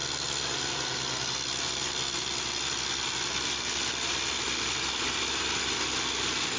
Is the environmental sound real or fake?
real